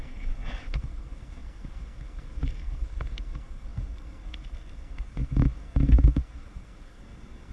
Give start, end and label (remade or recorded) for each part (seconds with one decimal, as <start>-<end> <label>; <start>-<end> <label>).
0.0-7.5 remade